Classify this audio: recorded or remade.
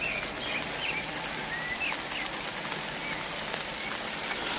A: recorded